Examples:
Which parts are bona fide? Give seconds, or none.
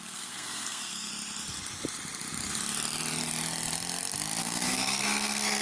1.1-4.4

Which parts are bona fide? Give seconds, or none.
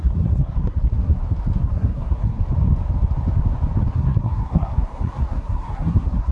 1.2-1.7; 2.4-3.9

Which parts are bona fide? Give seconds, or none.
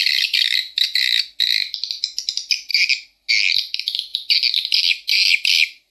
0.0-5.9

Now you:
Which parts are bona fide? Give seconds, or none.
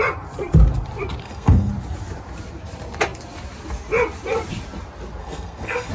0.0-1.2; 1.7-5.2